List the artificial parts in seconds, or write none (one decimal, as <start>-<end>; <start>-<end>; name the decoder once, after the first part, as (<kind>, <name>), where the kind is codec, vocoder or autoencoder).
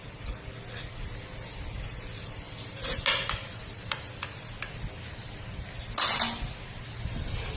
none